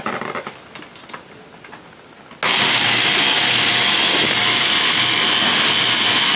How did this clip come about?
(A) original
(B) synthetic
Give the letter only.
A